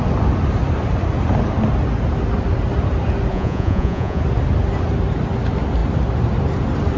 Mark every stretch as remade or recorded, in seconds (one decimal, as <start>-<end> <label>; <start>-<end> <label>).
0.0-3.3 recorded; 3.3-4.2 remade; 4.2-7.0 recorded